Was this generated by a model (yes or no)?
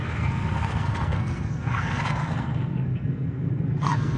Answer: yes